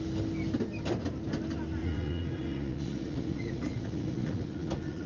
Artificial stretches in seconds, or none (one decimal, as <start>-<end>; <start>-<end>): 1.8-5.1

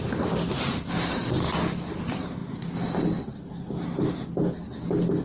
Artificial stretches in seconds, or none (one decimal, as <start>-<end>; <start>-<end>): none